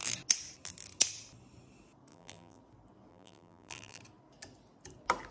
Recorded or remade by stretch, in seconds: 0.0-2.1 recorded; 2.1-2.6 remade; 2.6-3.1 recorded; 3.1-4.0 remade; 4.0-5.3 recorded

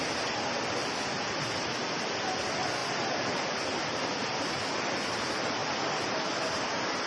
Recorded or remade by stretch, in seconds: 0.0-7.1 recorded

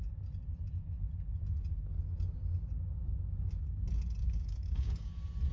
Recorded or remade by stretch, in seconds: 0.0-4.2 recorded; 4.2-5.1 remade; 5.1-5.5 recorded

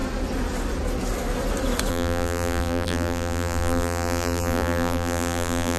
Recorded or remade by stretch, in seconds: 0.0-1.9 recorded; 1.9-5.8 remade

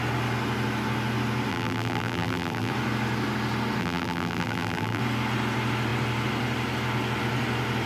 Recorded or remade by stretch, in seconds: 0.0-1.5 recorded; 1.5-2.7 remade; 2.7-3.8 recorded; 3.8-5.0 remade; 5.0-7.9 recorded

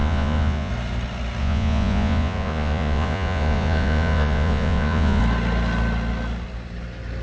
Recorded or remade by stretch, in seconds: 0.0-0.7 remade; 0.7-1.4 recorded; 1.4-5.2 remade; 5.2-7.2 recorded